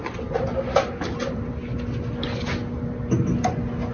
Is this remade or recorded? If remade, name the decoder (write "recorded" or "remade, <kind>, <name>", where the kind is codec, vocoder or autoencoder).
recorded